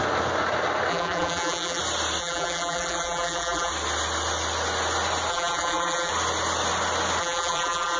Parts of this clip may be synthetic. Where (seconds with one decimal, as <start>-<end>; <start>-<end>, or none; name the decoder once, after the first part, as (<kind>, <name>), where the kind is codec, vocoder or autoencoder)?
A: 0.9-1.8 (vocoder, BigVGAN v2); 2.2-3.7; 5.3-6.1; 7.2-8.0